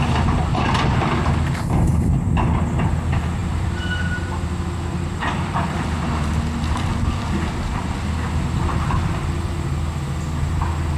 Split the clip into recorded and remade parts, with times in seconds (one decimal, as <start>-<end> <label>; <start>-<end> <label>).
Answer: 0.0-3.4 recorded; 3.4-6.1 remade; 6.1-11.0 recorded